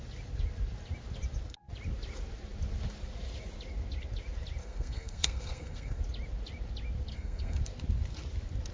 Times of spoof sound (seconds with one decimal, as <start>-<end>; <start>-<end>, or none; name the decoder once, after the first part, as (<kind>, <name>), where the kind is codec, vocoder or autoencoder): 4.6-6.0 (codec, SNAC); 7.1-7.6